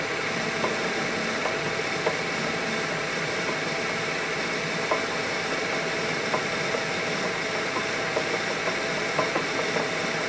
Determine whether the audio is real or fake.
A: fake